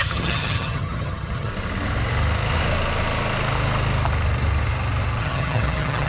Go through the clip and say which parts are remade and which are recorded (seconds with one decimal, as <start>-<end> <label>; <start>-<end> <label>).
0.0-1.5 remade; 1.5-5.2 recorded; 5.2-6.1 remade